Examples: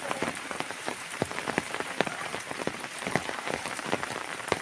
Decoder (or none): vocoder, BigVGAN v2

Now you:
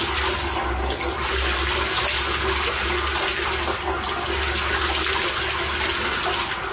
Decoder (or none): none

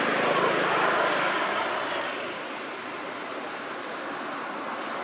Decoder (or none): none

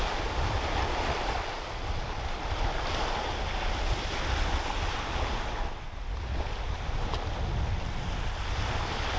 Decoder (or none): none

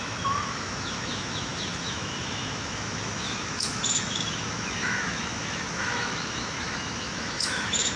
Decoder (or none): autoencoder, DAC-VAE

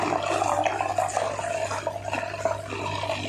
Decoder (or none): none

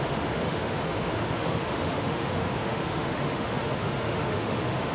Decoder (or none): autoencoder, DAC-VAE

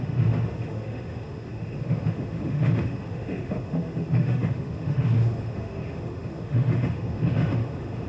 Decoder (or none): autoencoder, DAC-VAE